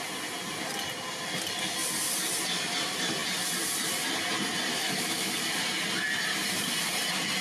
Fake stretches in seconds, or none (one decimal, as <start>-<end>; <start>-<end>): 4.7-5.3